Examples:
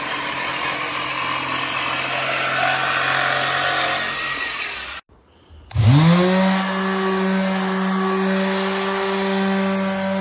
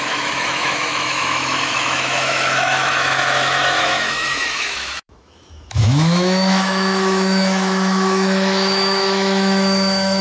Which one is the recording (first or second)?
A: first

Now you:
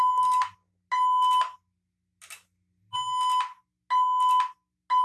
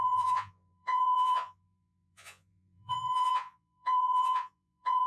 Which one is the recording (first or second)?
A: first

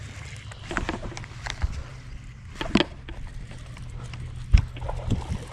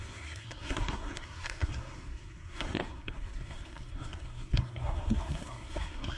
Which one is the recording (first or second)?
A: first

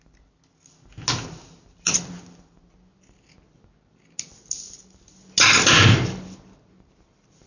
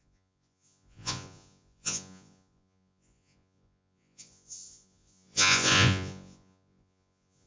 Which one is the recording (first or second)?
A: first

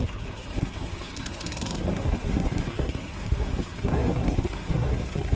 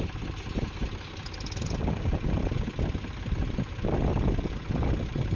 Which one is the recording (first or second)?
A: second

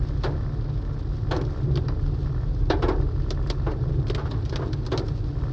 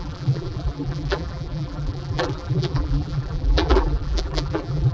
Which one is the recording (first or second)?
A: first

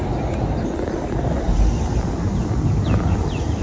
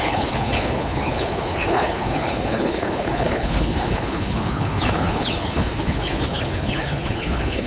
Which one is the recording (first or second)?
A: first